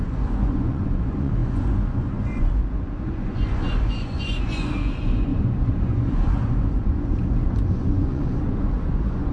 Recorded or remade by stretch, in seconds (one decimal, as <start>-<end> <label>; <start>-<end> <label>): 0.0-9.3 remade